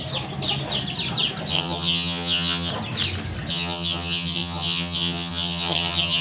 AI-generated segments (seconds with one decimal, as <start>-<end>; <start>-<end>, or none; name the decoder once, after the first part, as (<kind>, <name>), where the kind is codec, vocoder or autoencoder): 1.5-2.7 (vocoder, HiFi-GAN); 3.5-6.2